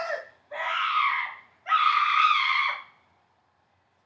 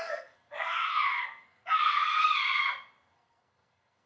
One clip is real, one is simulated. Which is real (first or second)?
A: first